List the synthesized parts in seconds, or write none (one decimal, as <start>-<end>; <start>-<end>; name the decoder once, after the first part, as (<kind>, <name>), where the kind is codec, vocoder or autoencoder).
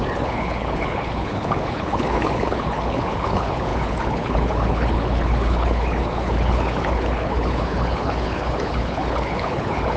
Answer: 0.0-10.0 (codec, HILCodec)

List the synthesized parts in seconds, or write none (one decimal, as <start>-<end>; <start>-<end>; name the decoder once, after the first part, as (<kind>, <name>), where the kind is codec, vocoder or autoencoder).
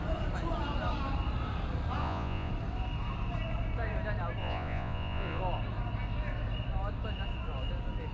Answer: 2.0-2.5 (vocoder, Vocos); 4.4-5.4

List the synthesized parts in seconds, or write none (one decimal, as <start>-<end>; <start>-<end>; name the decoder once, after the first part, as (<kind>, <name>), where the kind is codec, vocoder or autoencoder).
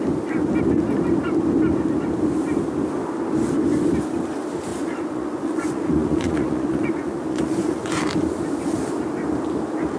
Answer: 4.7-8.0 (vocoder, Vocos)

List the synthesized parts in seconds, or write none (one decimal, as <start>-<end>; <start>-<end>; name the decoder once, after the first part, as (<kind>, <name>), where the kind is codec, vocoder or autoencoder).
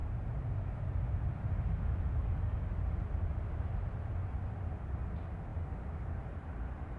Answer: none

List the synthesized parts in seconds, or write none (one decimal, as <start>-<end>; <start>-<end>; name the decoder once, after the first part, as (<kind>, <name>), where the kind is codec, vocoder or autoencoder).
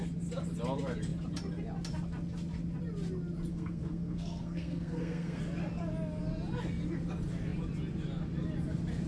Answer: 3.5-5.4 (codec, SNAC)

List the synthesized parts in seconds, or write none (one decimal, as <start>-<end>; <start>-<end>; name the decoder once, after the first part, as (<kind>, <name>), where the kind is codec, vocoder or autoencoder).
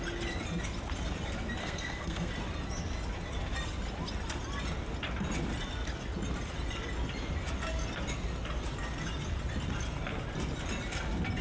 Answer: 1.6-2.3 (codec, SNAC)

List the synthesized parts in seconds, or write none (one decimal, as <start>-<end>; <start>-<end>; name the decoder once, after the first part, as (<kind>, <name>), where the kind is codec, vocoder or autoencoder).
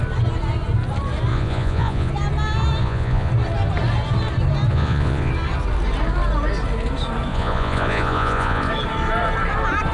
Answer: 1.3-2.1 (vocoder, Vocos); 2.8-3.3; 4.7-5.3; 7.3-8.7